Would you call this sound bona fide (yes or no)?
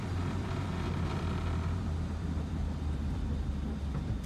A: no